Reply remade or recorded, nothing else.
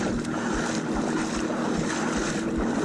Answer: recorded